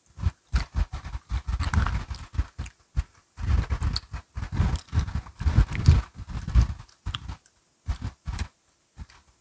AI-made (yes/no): no